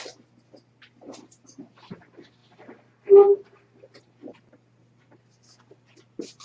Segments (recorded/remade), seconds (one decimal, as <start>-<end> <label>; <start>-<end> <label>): 0.0-6.4 recorded